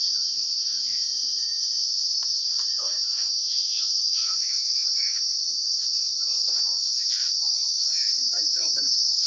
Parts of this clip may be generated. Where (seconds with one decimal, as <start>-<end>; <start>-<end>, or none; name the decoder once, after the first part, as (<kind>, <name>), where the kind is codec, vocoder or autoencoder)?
0.0-9.3 (autoencoder, DAC-VAE)